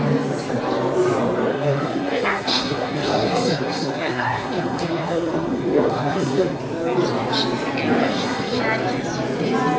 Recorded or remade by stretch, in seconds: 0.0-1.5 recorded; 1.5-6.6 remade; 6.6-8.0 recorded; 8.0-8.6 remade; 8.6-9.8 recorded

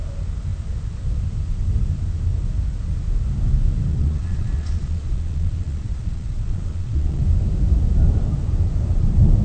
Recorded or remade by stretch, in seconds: 0.0-3.9 recorded; 3.9-7.2 remade; 7.2-9.4 recorded

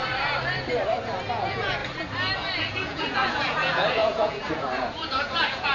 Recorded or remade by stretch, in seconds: 0.0-1.3 recorded; 1.3-1.8 remade; 1.8-2.6 recorded; 2.6-5.7 remade